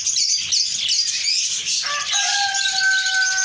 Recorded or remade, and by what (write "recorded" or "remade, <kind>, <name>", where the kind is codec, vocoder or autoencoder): recorded